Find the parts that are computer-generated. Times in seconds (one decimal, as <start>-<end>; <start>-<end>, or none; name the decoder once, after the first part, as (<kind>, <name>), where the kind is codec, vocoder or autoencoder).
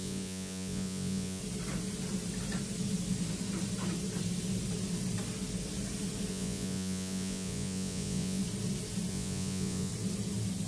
0.0-1.4 (vocoder, Vocos); 6.3-8.4; 9.1-9.9